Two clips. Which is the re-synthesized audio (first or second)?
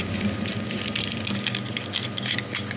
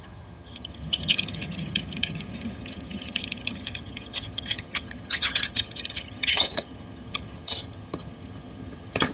second